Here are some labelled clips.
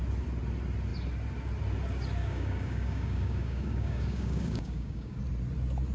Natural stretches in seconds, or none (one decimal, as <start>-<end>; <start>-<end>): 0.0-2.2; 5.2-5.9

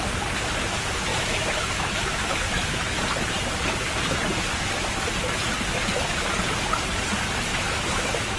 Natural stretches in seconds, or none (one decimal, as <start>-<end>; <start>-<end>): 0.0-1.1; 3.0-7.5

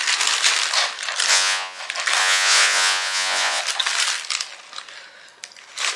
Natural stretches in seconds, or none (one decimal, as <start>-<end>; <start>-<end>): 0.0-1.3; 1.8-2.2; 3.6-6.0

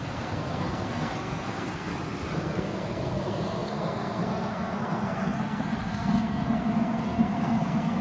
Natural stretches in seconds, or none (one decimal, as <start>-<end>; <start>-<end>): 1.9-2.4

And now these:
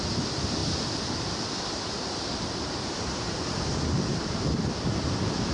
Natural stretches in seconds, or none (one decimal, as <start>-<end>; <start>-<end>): 0.0-5.5

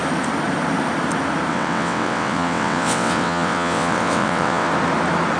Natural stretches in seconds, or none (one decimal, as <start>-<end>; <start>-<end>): 0.0-1.5; 4.7-5.4

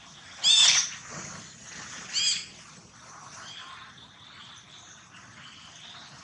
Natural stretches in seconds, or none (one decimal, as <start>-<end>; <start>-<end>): 0.0-2.5; 4.5-6.2